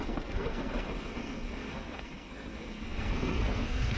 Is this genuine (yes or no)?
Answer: no